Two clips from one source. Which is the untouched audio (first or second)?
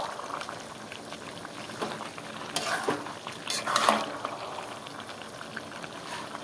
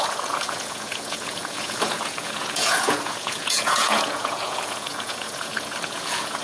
first